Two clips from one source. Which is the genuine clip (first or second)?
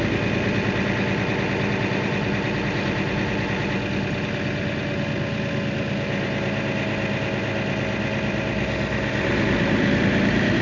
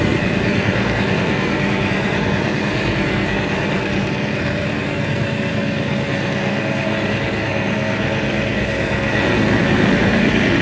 first